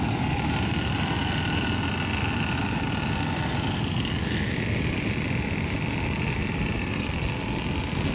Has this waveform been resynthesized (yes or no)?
no